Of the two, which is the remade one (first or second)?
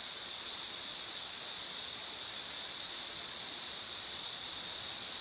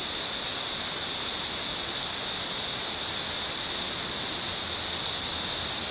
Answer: first